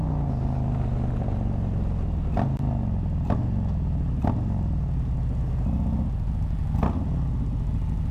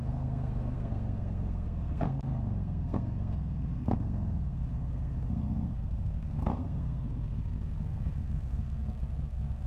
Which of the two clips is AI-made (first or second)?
second